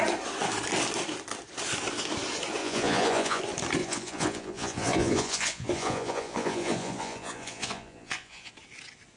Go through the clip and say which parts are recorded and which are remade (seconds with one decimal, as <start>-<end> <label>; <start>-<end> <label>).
0.0-2.6 recorded; 2.6-3.4 remade; 3.4-3.8 recorded; 3.8-8.5 remade; 8.5-9.2 recorded